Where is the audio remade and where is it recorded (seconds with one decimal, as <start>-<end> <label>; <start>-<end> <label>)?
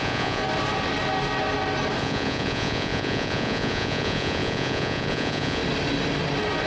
0.0-0.4 remade; 0.4-2.0 recorded; 2.0-5.6 remade; 5.6-6.7 recorded